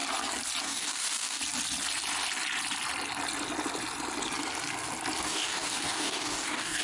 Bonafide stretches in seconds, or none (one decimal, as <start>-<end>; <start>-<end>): 0.0-0.6; 1.4-5.2